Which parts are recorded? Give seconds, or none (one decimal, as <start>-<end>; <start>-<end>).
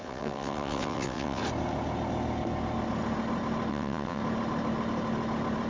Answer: 1.4-3.7; 4.2-5.7